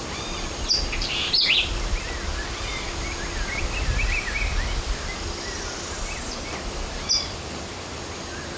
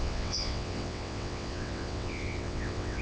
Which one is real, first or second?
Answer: first